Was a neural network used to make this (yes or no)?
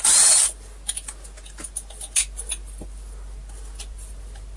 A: no